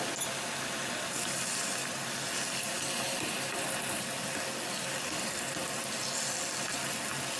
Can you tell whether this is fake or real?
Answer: real